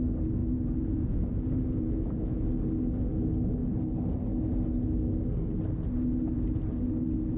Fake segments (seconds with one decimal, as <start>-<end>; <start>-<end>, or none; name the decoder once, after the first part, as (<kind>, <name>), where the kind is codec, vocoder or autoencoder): 0.4-2.5 (vocoder, Vocos)